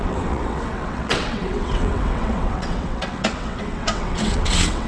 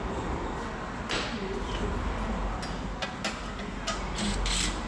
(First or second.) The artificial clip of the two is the first